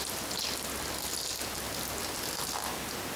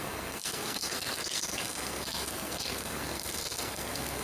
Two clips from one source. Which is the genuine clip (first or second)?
first